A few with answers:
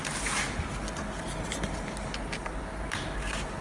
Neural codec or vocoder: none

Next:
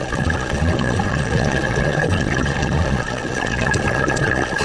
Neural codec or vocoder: vocoder, Vocos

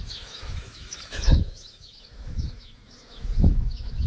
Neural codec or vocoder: autoencoder, DAC-VAE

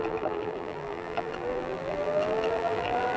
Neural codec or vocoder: vocoder, BigVGAN v2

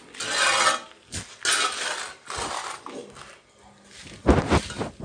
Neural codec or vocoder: none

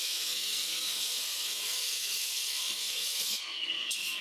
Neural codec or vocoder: codec, SNAC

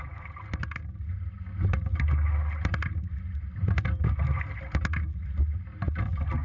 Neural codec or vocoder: none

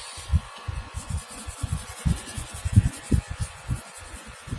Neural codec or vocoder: vocoder, Vocos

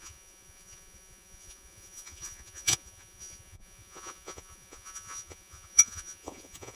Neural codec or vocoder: vocoder, Vocos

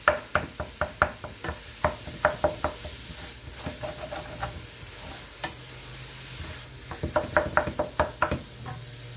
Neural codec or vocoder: none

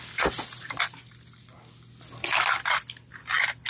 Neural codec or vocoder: none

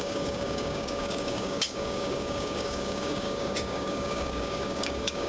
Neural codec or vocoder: codec, DAC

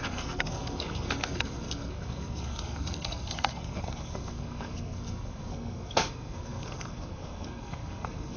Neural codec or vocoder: codec, SNAC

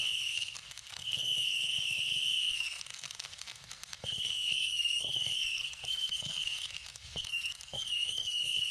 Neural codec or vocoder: codec, SNAC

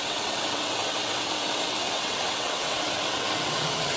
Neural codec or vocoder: vocoder, WaveNeXt